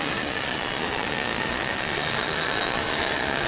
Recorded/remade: remade